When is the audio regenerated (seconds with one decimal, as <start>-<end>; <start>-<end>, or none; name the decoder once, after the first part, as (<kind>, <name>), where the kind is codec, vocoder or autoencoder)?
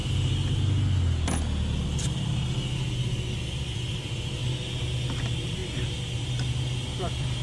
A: none